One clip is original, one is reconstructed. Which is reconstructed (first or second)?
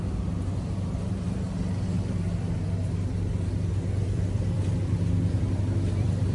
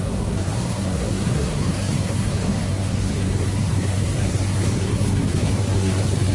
second